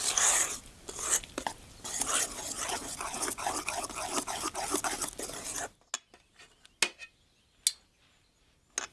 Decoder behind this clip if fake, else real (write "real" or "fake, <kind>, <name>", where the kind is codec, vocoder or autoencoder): real